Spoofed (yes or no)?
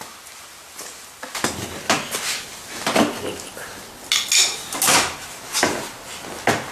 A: no